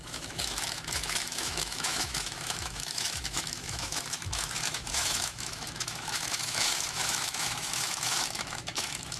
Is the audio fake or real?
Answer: fake